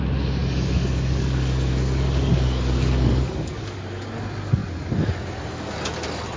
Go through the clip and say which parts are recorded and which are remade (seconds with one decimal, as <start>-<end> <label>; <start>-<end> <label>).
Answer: 0.0-0.4 recorded; 0.4-4.1 remade; 4.1-6.4 recorded